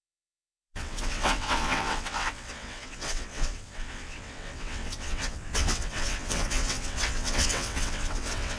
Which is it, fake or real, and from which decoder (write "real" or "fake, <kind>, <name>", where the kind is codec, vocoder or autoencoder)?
fake, vocoder, WaveNeXt